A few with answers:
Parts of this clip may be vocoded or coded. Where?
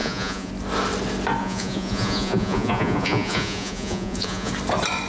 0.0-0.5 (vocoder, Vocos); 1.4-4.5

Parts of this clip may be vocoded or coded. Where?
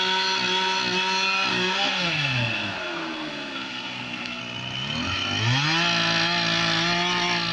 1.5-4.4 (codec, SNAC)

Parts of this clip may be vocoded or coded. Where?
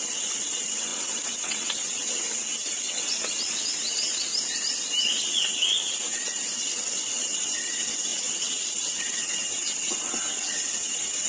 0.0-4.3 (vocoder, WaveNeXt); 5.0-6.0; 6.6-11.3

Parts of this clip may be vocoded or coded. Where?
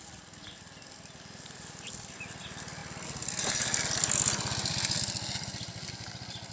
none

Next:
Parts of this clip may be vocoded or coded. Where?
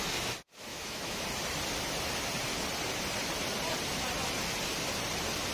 0.7-1.2 (autoencoder, DAC-VAE)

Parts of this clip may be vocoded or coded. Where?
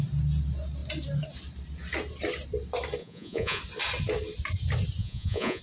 3.0-3.6 (vocoder, Vocos); 5.0-5.6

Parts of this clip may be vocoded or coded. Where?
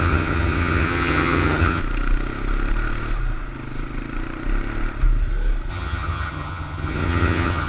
0.0-1.8 (vocoder, HiFi-GAN); 5.7-7.7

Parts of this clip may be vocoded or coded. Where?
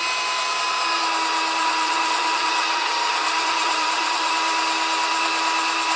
1.6-4.3 (vocoder, HiFi-GAN)